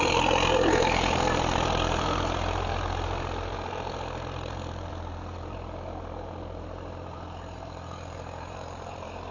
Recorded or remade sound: remade